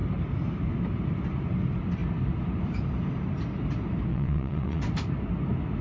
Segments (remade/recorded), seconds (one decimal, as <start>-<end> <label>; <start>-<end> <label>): 0.0-4.1 recorded; 4.1-4.8 remade; 4.8-5.8 recorded